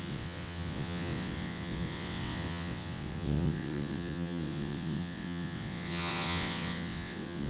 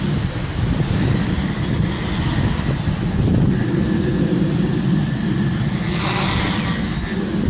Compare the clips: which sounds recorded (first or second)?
second